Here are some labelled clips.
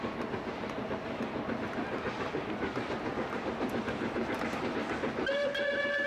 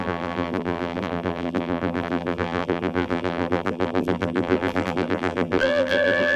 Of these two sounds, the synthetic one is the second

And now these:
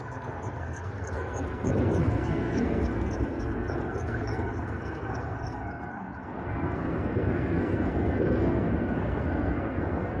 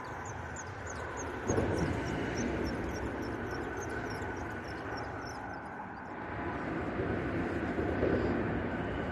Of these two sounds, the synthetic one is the first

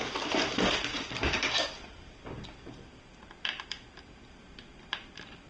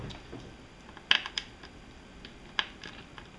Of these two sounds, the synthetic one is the first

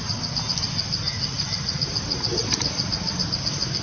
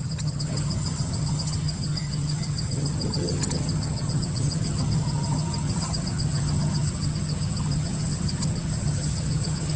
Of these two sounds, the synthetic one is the second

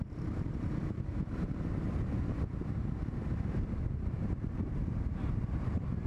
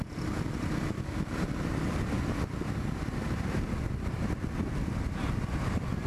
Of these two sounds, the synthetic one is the first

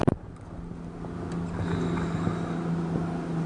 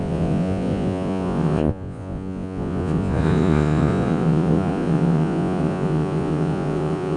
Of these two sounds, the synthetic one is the second